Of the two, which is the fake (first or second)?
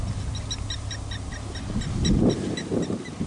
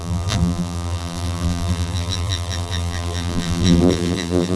second